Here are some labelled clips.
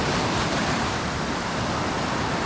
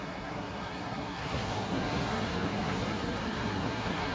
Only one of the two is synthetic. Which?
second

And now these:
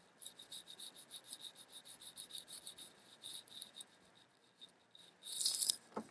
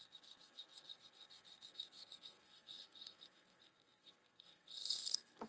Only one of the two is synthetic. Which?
second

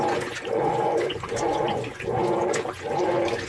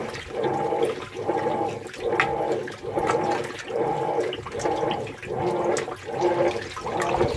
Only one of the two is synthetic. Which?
first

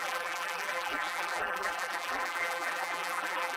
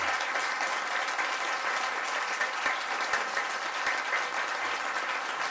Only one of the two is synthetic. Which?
first